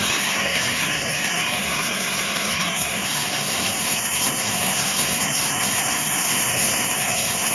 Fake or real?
fake